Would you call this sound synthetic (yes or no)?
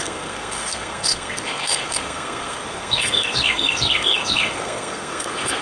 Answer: yes